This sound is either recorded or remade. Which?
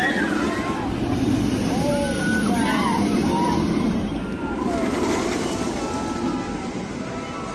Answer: recorded